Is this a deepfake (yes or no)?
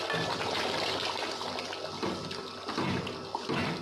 no